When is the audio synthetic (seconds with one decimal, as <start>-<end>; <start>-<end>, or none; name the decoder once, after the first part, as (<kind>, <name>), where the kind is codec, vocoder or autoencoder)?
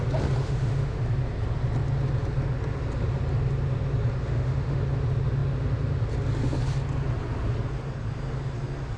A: 0.4-1.0 (autoencoder, DAC-VAE); 4.2-4.8